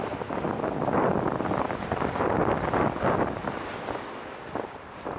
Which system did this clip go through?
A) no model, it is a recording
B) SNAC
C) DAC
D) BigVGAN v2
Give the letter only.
A